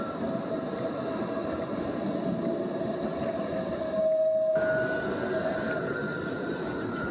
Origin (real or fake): real